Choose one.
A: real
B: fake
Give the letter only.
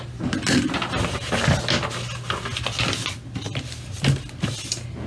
A